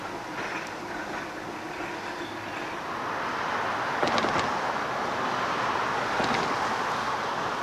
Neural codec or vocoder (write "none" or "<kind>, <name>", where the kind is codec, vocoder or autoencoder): none